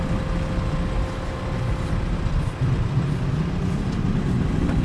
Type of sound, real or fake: real